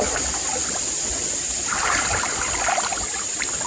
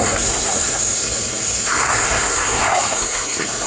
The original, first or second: first